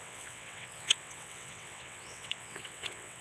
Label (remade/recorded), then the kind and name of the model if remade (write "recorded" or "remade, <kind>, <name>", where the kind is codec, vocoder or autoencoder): remade, vocoder, WaveNeXt